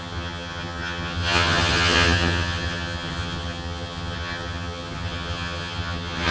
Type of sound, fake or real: fake